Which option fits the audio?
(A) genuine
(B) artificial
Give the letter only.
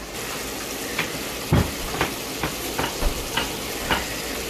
A